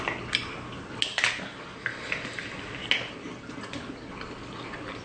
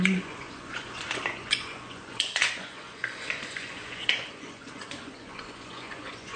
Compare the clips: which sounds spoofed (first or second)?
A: second